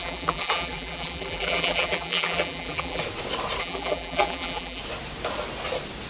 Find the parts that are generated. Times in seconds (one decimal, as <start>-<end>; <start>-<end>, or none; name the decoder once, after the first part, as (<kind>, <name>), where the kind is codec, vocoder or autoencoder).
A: 0.0-3.0 (vocoder, BigVGAN v2); 3.6-4.8